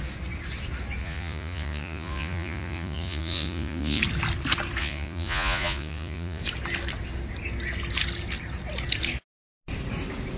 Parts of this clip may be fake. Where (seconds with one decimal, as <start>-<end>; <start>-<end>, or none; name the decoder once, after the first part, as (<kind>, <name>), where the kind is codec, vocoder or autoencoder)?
1.0-4.0 (vocoder, Vocos); 4.8-6.4